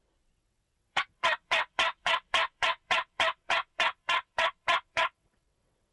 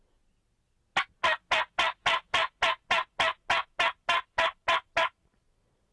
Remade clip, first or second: first